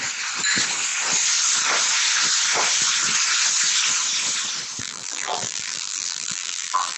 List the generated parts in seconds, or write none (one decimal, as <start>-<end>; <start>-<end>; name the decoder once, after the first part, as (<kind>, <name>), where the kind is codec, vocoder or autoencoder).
4.8-7.0 (vocoder, BigVGAN v2)